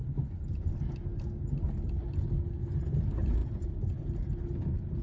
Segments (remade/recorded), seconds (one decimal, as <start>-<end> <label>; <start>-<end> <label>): 0.0-5.0 recorded